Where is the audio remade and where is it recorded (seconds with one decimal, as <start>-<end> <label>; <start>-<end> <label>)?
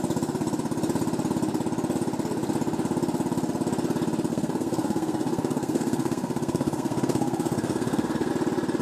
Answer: 0.0-4.3 recorded; 4.3-8.3 remade; 8.3-8.8 recorded